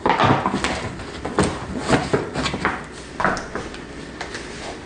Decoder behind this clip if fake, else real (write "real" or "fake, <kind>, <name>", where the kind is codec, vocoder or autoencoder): real